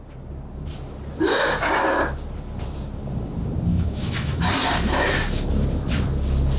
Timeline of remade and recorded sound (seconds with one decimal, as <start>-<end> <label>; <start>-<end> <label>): 0.0-3.7 recorded; 3.7-4.4 remade; 4.4-6.6 recorded